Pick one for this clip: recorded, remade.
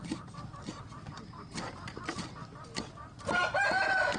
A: recorded